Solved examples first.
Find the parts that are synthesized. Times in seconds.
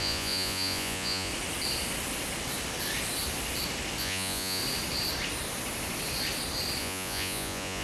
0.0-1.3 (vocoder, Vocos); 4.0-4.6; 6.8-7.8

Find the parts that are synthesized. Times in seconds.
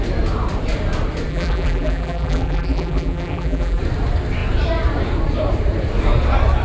1.3-3.8 (vocoder, BigVGAN v2)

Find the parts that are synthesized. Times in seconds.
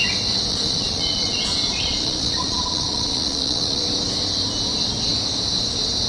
0.5-3.8 (vocoder, Vocos)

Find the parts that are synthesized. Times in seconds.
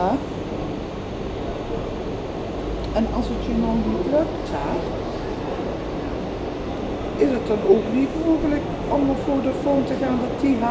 none